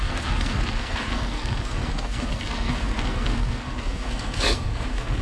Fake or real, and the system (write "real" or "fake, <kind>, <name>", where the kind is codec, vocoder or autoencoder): fake, codec, SNAC